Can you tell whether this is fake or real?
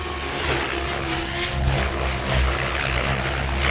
real